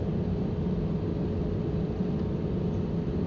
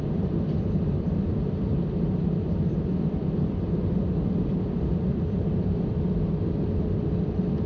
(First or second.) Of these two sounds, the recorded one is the first